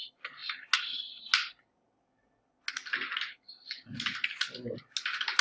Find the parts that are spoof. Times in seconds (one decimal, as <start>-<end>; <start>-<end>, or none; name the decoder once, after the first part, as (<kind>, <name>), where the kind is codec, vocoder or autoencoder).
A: none